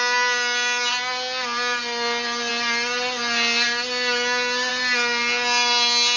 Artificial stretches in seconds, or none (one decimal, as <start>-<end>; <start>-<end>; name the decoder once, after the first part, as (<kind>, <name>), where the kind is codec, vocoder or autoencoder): none